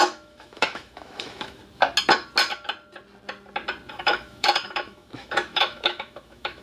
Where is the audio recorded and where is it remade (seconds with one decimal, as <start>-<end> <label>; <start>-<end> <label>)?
0.0-1.6 remade; 1.6-3.9 recorded; 3.9-6.6 remade